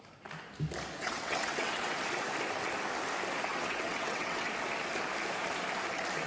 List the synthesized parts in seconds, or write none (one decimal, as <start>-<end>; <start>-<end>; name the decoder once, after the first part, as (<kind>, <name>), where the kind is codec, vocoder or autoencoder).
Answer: 1.0-2.0 (vocoder, WaveNeXt); 3.5-4.5